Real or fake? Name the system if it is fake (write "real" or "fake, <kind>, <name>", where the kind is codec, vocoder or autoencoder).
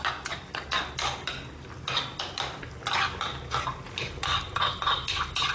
real